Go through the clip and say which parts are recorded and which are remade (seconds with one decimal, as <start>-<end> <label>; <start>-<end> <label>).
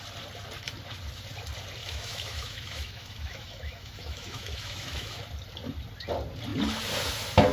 0.0-1.8 recorded; 1.8-5.2 remade; 5.2-7.5 recorded